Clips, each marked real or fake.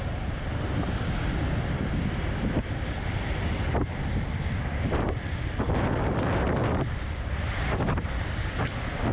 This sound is real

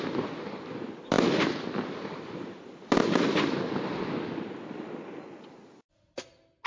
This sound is real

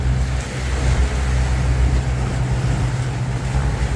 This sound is real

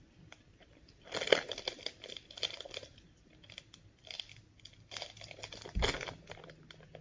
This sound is real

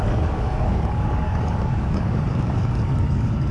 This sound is fake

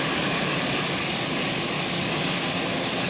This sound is fake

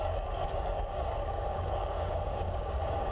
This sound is fake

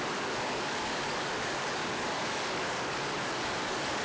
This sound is fake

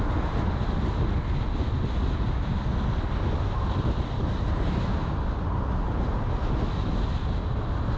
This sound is real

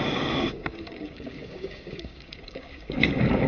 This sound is fake